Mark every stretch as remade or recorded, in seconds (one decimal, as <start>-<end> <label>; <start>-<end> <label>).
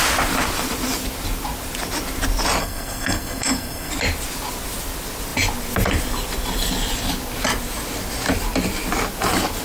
0.0-2.6 recorded; 2.6-3.9 remade; 3.9-9.6 recorded